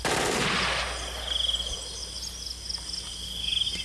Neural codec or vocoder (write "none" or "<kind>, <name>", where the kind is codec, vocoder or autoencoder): none